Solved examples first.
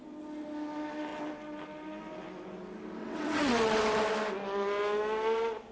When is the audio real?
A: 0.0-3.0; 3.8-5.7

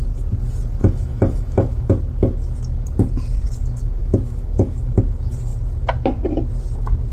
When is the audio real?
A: 0.0-0.8; 1.9-4.0; 4.9-7.1

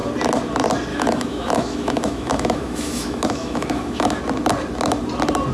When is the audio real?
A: 0.0-0.9; 4.2-5.5

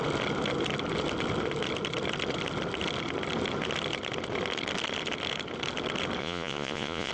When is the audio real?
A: 0.0-6.2

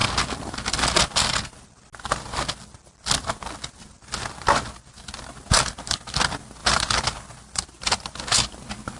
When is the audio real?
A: 0.0-6.6; 8.6-9.0

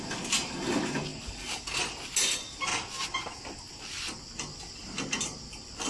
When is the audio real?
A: 0.0-5.9

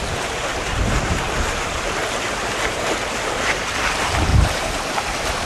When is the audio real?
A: 0.0-0.5; 3.0-4.3